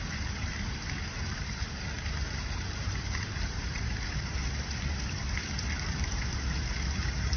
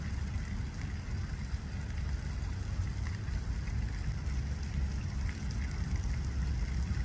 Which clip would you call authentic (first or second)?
second